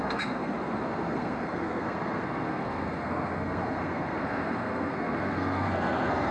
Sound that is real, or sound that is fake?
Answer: fake